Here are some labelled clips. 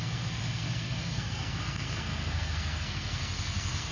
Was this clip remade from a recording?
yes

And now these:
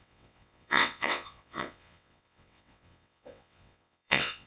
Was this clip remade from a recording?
yes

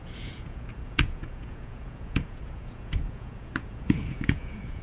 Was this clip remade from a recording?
yes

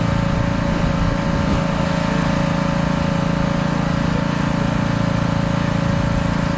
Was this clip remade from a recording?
no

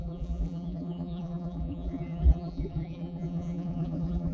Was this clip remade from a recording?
yes